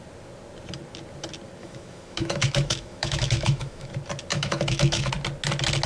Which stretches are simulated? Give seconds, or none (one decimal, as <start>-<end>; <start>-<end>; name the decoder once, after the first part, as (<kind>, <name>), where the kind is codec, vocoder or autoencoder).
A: 1.6-3.9 (autoencoder, DAC-VAE); 4.3-5.1